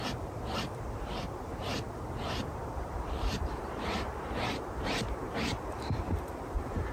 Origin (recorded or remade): remade